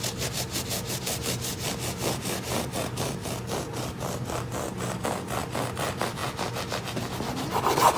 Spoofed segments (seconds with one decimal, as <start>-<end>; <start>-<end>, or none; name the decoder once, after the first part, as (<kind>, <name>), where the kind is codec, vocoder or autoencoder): none